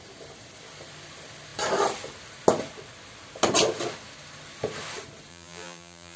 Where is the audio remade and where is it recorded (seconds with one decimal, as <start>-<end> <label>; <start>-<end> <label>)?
0.0-5.3 recorded; 5.3-6.2 remade